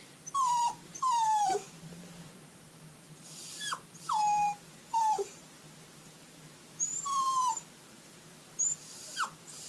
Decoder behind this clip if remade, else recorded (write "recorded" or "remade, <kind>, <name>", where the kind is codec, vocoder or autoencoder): remade, vocoder, BigVGAN v2